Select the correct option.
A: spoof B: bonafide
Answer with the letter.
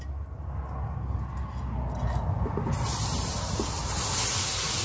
B